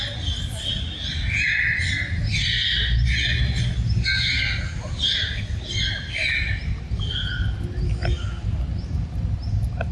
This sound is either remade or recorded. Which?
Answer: recorded